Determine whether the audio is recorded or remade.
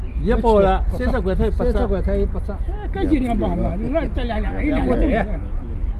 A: recorded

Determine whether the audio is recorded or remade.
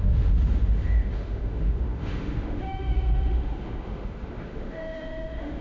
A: remade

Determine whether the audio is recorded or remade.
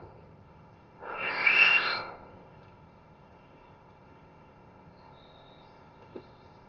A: remade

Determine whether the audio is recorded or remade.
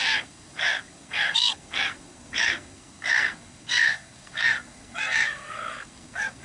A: remade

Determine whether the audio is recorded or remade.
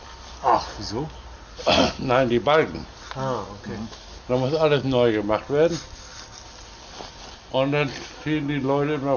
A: recorded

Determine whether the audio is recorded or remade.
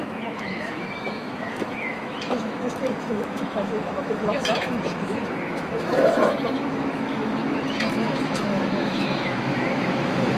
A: remade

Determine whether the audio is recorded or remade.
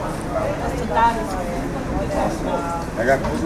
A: recorded